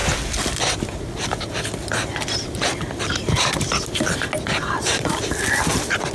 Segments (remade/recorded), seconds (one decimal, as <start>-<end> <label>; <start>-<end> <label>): 0.0-6.1 recorded

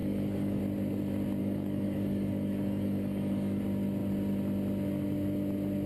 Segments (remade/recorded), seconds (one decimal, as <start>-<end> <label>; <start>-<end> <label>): 0.0-0.6 remade; 0.6-1.4 recorded; 1.4-3.6 remade; 3.6-5.9 recorded

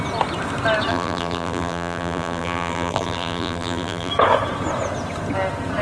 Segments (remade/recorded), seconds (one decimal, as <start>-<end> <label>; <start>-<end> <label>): 0.0-0.9 recorded; 0.9-4.1 remade; 4.1-5.8 recorded

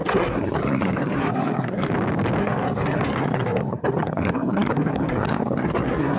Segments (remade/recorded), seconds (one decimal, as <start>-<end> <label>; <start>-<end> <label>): 0.0-1.9 remade; 1.9-2.4 recorded; 2.4-6.2 remade

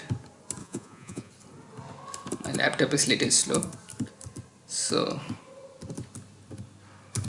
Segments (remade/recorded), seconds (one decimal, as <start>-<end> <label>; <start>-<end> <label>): 0.0-0.6 recorded; 0.6-1.3 remade; 1.3-7.3 recorded

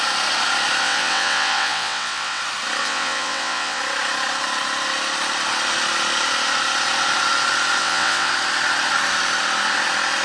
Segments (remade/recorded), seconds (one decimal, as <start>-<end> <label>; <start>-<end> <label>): 0.0-0.8 recorded; 0.8-2.4 remade; 2.4-2.8 recorded; 2.8-3.8 remade; 3.8-7.8 recorded; 7.8-8.3 remade; 8.3-10.2 recorded

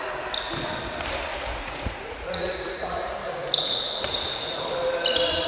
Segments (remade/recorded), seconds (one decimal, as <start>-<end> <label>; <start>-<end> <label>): 0.0-1.3 recorded; 1.3-4.6 remade; 4.6-5.5 recorded

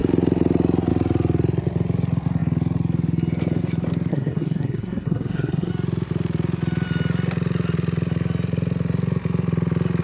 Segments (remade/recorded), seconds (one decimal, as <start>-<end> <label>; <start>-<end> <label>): 0.0-4.1 recorded; 4.1-5.7 remade; 5.7-10.0 recorded